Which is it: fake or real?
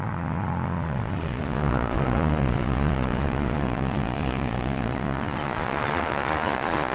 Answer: fake